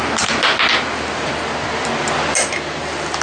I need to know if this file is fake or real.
real